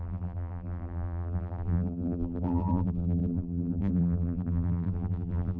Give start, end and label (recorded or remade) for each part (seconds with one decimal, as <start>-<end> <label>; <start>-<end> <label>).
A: 0.0-5.6 remade